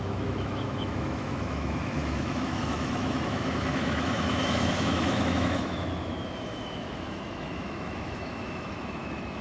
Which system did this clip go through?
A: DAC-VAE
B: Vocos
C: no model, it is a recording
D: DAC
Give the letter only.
A